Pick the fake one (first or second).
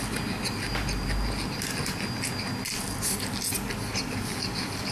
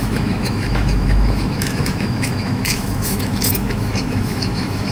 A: second